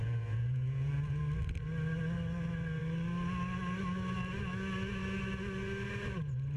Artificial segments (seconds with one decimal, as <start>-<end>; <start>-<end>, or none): 0.0-1.2